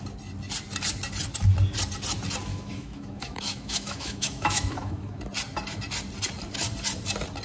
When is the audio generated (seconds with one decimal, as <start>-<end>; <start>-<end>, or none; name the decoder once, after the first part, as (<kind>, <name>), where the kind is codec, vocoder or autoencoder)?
2.5-5.2 (autoencoder, DAC-VAE)